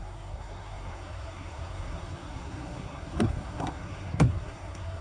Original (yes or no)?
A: no